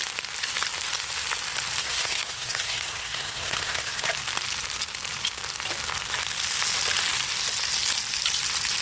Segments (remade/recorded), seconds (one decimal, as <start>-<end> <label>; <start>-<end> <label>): 0.0-1.8 recorded; 1.8-4.1 remade; 4.1-8.8 recorded

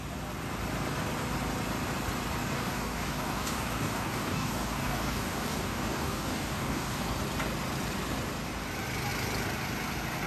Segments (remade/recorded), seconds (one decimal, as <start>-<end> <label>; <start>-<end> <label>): 0.0-2.4 recorded; 2.4-7.0 remade; 7.0-10.3 recorded

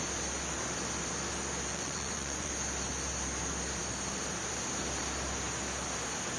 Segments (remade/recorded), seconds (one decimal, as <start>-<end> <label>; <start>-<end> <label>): 0.0-1.7 recorded; 1.7-2.5 remade; 2.5-6.4 recorded

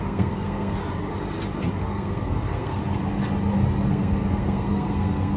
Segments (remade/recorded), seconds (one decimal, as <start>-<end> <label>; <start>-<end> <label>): 0.0-0.8 remade; 0.8-1.8 recorded; 1.8-2.8 remade; 2.8-3.9 recorded; 3.9-5.4 remade